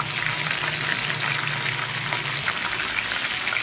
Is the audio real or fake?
real